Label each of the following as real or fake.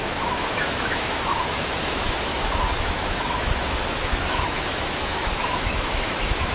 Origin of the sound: fake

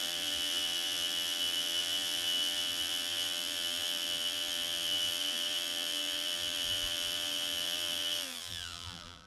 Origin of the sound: fake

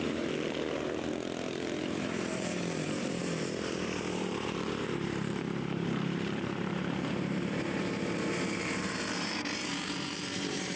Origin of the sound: fake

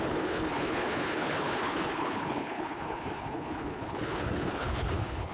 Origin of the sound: fake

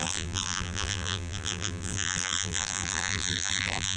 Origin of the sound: fake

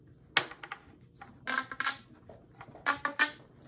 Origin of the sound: real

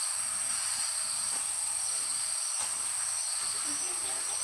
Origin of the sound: real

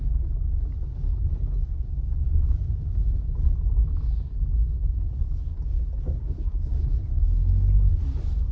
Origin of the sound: real